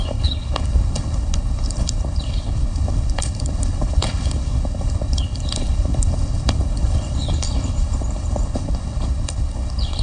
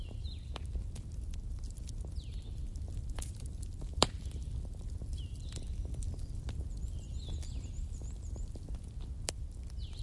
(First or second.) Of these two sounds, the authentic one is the second